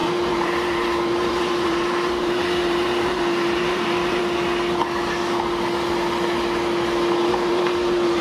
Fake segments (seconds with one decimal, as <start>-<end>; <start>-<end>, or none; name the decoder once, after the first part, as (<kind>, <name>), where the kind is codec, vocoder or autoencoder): 0.0-4.2 (vocoder, BigVGAN v2); 7.3-8.2

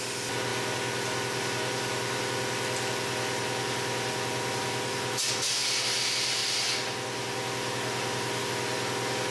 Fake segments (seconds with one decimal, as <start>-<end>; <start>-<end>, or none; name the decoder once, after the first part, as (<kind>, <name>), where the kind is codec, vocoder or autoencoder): none

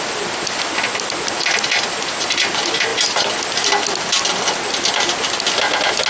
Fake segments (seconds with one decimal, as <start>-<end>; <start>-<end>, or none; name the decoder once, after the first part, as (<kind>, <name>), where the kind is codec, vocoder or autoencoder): none

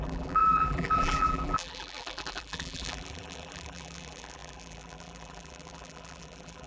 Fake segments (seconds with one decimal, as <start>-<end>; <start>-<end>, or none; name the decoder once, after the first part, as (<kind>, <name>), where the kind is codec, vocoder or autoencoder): 0.0-6.7 (vocoder, BigVGAN v2)

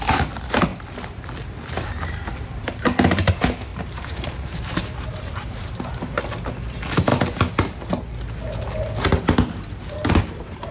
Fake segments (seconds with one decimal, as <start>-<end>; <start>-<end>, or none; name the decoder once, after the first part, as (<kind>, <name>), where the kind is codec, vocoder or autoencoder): 3.7-5.7 (vocoder, BigVGAN v2)

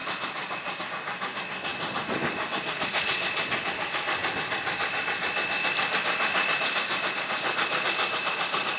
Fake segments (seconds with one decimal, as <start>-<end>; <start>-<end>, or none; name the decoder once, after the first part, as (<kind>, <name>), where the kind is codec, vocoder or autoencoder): 0.0-0.8 (vocoder, BigVGAN v2)

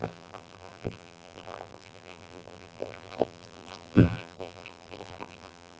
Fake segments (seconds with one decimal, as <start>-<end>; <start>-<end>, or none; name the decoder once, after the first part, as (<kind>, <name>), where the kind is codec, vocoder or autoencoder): 0.0-5.8 (vocoder, BigVGAN v2)